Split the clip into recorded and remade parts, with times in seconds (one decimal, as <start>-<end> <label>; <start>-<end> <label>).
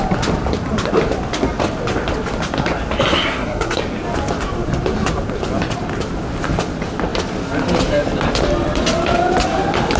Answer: 0.0-3.1 recorded; 3.1-3.8 remade; 3.8-10.0 recorded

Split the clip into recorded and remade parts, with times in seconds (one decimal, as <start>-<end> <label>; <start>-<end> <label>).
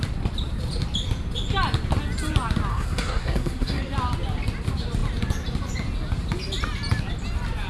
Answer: 0.0-2.7 recorded; 2.7-3.8 remade; 3.8-7.7 recorded